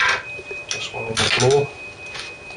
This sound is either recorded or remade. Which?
recorded